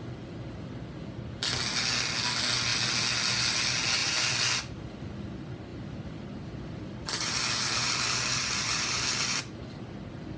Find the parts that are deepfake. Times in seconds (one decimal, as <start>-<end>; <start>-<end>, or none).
4.0-4.6; 5.7-9.4